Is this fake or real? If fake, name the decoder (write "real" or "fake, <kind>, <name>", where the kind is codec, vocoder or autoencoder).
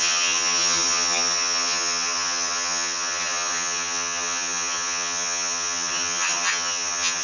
fake, vocoder, HiFi-GAN